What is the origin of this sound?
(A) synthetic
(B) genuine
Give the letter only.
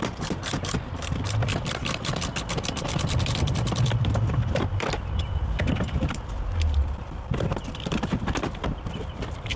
A